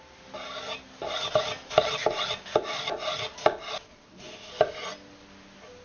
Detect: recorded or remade recorded